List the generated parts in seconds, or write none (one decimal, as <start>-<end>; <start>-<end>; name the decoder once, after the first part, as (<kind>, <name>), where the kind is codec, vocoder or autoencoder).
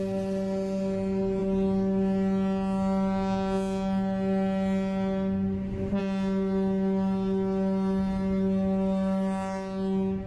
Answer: none